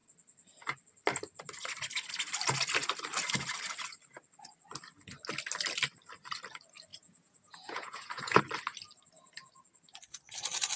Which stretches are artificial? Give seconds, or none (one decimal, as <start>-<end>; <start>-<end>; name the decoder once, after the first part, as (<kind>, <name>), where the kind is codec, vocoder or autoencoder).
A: 6.9-8.4 (vocoder, Vocos)